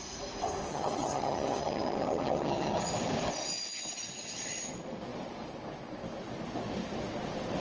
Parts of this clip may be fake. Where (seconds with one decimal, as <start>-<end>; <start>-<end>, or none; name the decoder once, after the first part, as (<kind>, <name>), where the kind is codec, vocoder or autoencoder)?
0.7-2.8 (vocoder, HiFi-GAN)